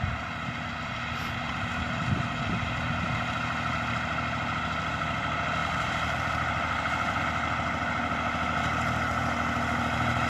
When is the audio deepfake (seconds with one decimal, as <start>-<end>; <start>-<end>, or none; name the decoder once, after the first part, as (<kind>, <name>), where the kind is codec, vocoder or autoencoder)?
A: 5.6-7.2 (vocoder, BigVGAN v2)